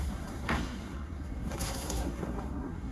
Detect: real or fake fake